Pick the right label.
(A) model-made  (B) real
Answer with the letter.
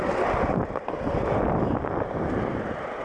B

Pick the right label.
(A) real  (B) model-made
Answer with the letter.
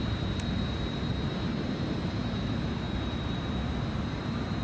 B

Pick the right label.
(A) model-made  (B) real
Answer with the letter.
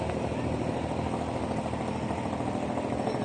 B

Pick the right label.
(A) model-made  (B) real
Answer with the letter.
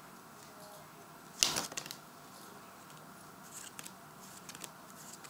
B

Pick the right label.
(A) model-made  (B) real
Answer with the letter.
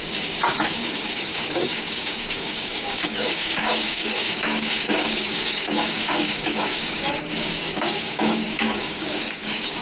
A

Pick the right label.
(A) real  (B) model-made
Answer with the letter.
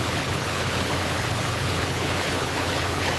B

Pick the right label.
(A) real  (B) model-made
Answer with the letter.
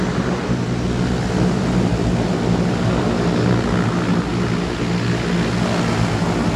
A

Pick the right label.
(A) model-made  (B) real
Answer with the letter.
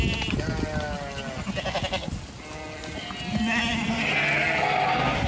B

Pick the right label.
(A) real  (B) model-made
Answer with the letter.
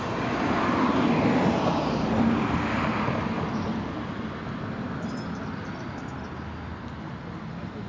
A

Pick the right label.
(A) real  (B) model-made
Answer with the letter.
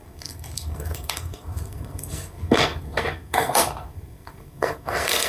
B